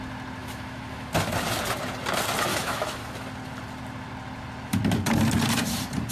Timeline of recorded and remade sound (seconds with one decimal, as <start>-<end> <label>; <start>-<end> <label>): 0.0-0.4 recorded; 0.4-1.1 remade; 1.1-2.5 recorded; 2.5-3.1 remade; 3.1-6.1 recorded